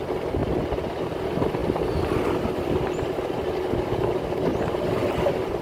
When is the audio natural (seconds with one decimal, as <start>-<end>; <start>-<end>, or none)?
0.0-5.6